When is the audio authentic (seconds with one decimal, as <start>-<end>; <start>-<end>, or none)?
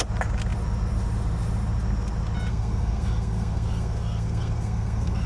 0.0-2.5